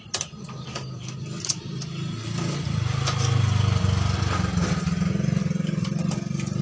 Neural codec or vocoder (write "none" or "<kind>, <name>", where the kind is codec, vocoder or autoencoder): none